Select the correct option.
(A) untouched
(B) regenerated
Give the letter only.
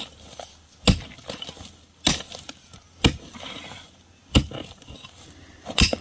A